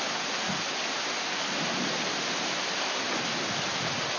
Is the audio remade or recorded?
recorded